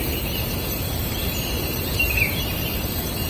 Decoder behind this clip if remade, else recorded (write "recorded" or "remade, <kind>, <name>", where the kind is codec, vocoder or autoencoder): remade, vocoder, BigVGAN v2